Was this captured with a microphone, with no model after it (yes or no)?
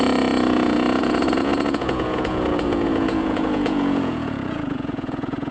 no